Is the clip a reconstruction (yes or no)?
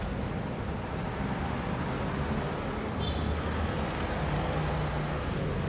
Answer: no